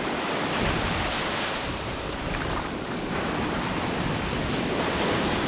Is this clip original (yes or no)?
no